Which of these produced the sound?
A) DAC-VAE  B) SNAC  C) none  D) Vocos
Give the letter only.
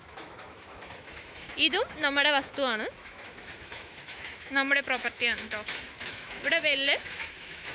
A